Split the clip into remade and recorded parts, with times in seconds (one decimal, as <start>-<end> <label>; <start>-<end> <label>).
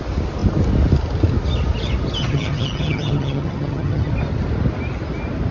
0.0-2.2 recorded; 2.2-4.1 remade; 4.1-5.5 recorded